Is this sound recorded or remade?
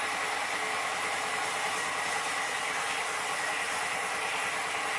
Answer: recorded